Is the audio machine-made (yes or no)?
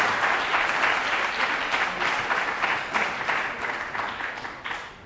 no